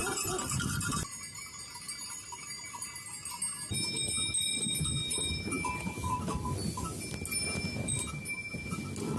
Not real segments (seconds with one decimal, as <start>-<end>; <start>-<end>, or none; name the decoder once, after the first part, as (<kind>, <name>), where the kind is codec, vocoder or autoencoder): 5.0-7.0 (vocoder, BigVGAN v2)